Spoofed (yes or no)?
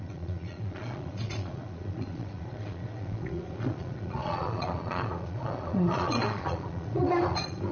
yes